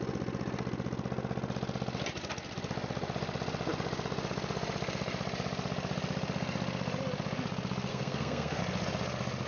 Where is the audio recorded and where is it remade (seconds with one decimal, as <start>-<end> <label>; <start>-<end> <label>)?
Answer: 0.0-7.9 recorded; 7.9-8.6 remade; 8.6-9.5 recorded